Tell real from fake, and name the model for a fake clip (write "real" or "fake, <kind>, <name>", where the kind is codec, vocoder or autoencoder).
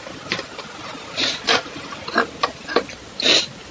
real